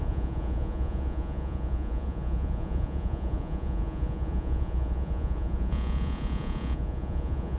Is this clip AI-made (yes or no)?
yes